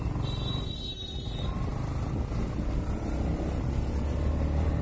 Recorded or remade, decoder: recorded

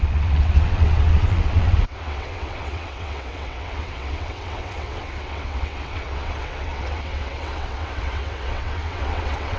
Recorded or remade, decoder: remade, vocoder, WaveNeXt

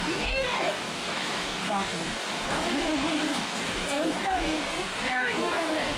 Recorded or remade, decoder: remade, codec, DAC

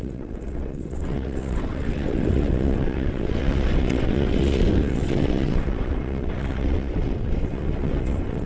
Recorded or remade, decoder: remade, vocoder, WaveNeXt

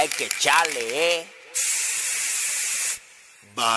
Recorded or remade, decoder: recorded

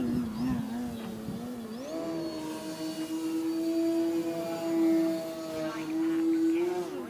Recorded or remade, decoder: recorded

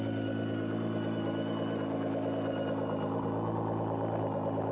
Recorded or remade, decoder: recorded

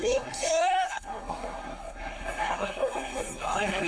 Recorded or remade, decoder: remade, codec, SNAC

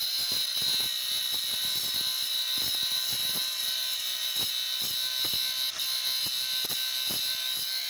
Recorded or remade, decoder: recorded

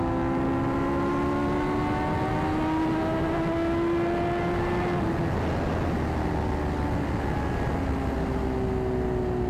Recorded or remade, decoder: recorded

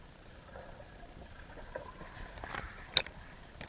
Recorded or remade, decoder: recorded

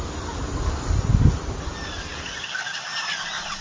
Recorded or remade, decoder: recorded